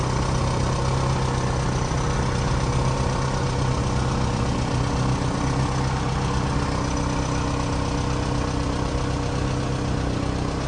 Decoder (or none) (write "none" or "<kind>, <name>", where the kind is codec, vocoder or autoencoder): none